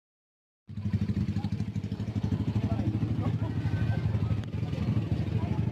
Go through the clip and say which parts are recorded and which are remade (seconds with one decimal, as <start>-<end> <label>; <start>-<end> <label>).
0.0-0.5 recorded; 0.5-1.2 remade; 1.2-5.7 recorded